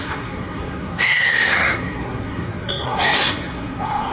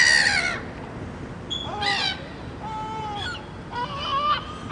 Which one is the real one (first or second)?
second